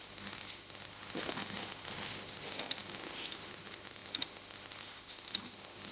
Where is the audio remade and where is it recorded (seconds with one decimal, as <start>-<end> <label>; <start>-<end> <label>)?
0.0-5.9 remade